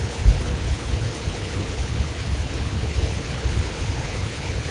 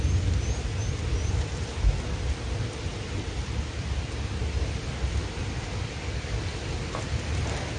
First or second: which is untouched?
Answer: second